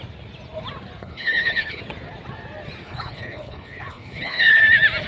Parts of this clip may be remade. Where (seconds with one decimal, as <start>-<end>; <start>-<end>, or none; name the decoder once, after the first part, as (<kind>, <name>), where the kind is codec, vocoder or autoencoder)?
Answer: 1.0-1.8 (codec, HILCodec); 2.8-4.6